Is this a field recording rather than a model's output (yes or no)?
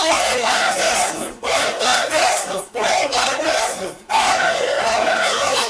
no